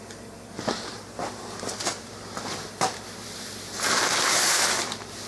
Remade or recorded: remade